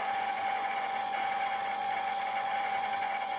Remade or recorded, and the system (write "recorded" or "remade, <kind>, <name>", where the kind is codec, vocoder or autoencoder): remade, vocoder, Vocos